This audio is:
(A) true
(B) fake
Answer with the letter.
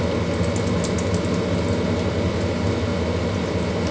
A